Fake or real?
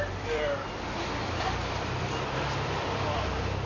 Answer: fake